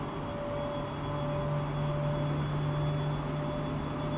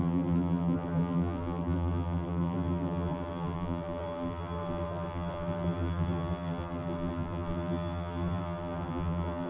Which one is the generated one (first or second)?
second